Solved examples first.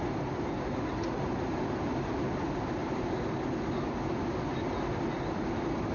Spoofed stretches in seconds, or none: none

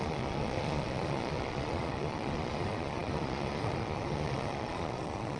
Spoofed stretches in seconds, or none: 0.0-5.4 (vocoder, Vocos)

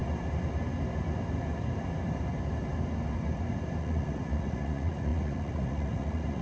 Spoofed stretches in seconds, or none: 3.8-6.4 (vocoder, Vocos)